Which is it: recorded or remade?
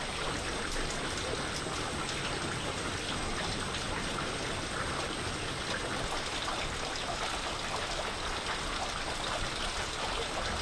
recorded